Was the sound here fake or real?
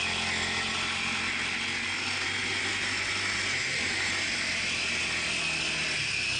real